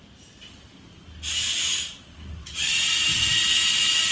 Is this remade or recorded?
recorded